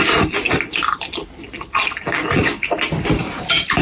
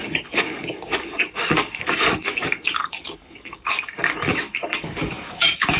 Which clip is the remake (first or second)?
second